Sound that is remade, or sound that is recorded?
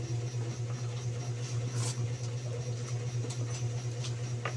recorded